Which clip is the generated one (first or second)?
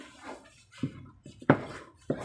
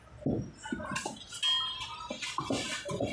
first